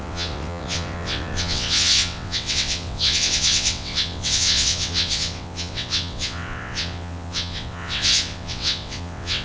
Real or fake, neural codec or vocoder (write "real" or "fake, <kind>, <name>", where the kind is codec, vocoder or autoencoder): fake, vocoder, WaveNeXt